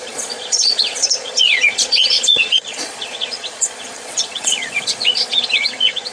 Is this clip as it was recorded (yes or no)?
no